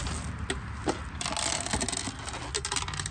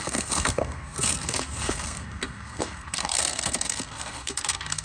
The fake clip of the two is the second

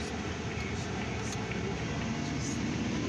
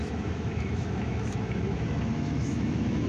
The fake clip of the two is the second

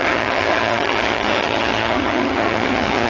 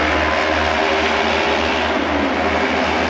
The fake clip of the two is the first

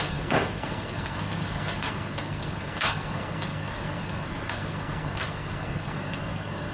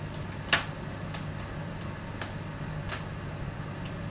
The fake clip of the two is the first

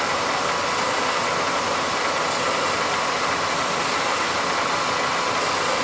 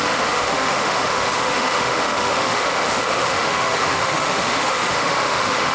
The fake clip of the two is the second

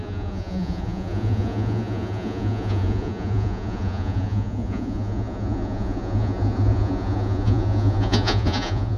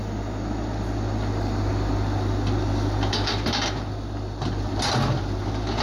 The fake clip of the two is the first